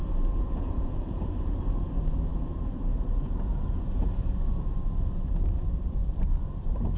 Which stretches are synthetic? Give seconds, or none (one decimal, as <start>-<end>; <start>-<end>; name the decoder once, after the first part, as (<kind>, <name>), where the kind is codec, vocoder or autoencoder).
0.0-7.0 (vocoder, BigVGAN v2)